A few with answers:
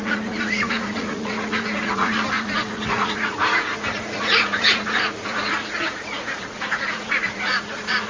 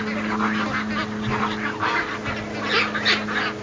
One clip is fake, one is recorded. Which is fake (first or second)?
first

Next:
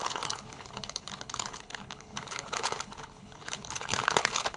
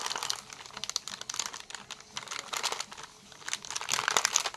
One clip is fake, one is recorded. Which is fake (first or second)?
first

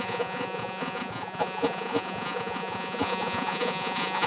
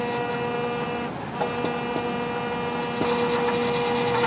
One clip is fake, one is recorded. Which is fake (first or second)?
first